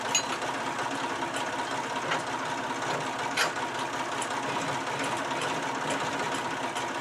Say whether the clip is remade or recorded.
recorded